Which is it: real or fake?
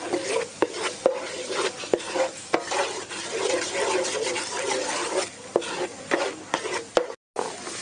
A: real